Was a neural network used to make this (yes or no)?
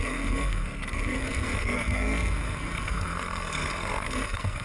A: yes